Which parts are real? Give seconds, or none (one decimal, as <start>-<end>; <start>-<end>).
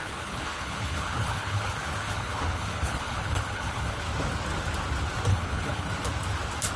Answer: 4.0-5.3; 5.9-6.8